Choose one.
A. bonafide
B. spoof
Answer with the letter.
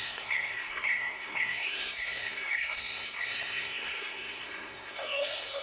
B